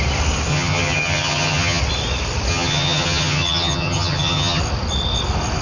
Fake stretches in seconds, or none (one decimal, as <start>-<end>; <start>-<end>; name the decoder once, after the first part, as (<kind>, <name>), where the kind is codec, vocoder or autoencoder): 0.5-1.8 (vocoder, HiFi-GAN); 2.5-4.6